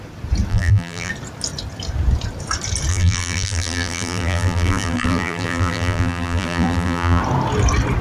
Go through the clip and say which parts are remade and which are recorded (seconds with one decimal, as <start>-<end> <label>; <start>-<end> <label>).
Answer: 0.0-0.5 recorded; 0.5-1.1 remade; 1.1-2.9 recorded; 2.9-7.2 remade; 7.2-8.0 recorded